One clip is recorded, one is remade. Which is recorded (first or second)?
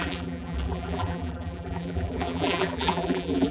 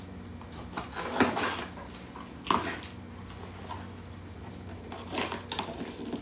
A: second